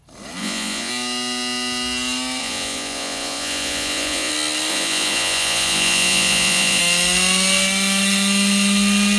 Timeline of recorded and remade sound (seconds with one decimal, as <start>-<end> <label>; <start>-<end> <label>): 0.0-0.4 recorded; 0.4-0.9 remade; 0.9-2.4 recorded; 2.4-4.3 remade; 4.3-4.7 recorded; 4.7-6.8 remade; 6.8-9.2 recorded